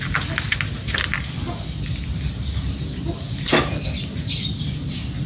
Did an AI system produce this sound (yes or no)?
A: no